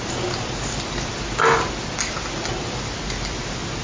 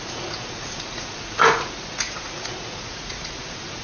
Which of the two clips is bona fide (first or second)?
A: first